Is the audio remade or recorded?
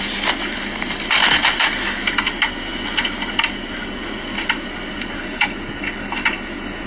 recorded